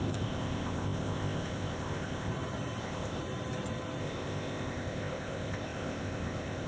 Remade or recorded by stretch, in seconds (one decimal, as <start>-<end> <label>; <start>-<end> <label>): 0.0-2.3 remade; 2.3-2.8 recorded; 2.8-3.2 remade; 3.2-4.0 recorded; 4.0-6.7 remade